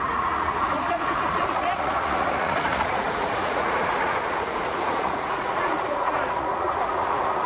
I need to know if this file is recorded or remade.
remade